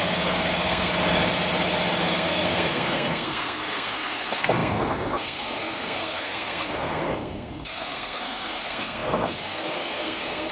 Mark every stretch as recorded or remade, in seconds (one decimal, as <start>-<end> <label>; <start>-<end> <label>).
0.0-0.9 remade; 0.9-2.0 recorded; 2.0-10.5 remade

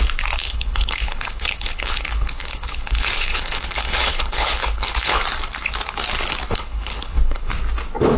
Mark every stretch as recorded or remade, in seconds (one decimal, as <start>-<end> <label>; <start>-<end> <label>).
0.0-0.4 recorded; 0.4-5.2 remade; 5.2-6.5 recorded; 6.5-7.5 remade; 7.5-8.2 recorded

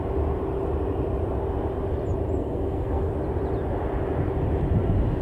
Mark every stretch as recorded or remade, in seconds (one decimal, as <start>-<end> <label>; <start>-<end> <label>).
0.0-2.4 recorded; 2.4-3.1 remade; 3.1-5.2 recorded

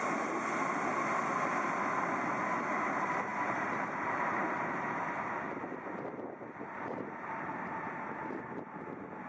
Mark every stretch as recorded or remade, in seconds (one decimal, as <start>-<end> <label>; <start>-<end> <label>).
0.0-9.3 recorded

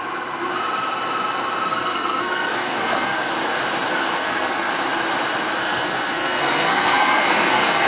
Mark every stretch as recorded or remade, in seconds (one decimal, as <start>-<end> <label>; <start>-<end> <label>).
0.0-1.7 recorded; 1.7-3.3 remade; 3.3-3.9 recorded; 3.9-4.7 remade; 4.7-5.6 recorded; 5.6-7.9 remade

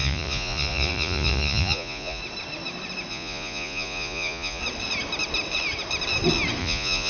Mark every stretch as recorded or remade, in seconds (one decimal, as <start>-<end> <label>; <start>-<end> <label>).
0.0-2.2 remade; 2.2-3.1 recorded; 3.1-4.6 remade; 4.6-6.6 recorded; 6.6-7.1 remade

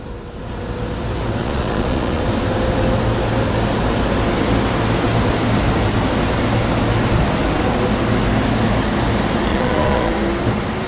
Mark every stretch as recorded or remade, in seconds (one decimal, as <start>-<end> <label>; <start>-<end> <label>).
0.0-1.4 recorded; 1.4-2.2 remade; 2.2-9.5 recorded; 9.5-10.1 remade; 10.1-10.9 recorded

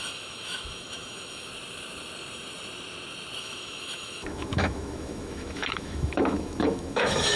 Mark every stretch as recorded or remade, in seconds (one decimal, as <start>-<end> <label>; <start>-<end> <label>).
0.0-1.5 remade; 1.5-3.4 recorded; 3.4-7.4 remade